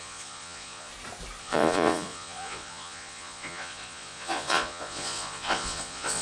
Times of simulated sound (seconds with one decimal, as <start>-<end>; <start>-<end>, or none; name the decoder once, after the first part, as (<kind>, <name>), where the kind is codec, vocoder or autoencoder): 0.0-0.9 (vocoder, Vocos); 1.4-6.2